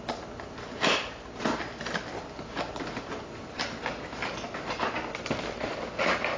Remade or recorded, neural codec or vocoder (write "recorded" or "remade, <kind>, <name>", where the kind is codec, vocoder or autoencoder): recorded